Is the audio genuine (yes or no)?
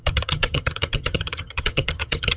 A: no